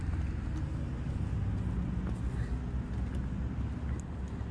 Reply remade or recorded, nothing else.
recorded